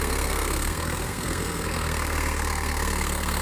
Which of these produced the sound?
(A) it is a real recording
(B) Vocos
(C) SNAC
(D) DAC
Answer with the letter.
C